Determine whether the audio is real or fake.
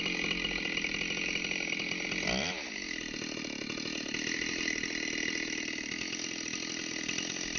real